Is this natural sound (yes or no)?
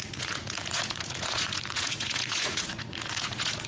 no